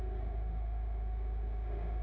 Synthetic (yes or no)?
yes